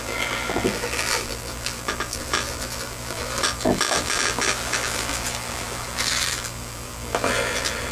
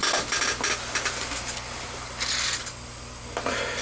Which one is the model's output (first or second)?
first